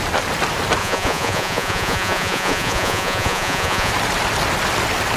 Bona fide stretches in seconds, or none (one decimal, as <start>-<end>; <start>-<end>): 0.0-0.8; 3.9-5.2